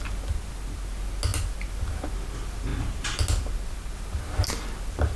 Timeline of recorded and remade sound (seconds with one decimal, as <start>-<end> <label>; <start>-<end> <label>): 0.0-5.2 recorded